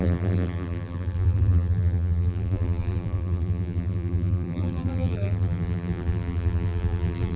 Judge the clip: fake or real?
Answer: fake